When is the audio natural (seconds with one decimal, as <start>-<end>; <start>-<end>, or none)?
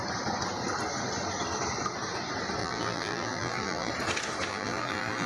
0.0-2.6; 3.9-4.5